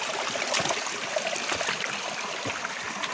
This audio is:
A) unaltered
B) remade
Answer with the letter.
A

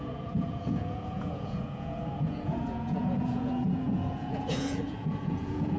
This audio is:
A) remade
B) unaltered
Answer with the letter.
A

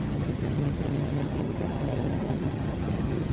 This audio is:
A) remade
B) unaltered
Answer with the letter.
A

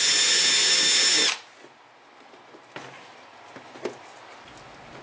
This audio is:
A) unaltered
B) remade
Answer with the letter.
A